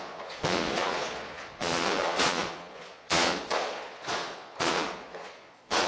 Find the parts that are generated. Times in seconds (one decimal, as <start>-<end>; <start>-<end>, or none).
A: 0.0-5.9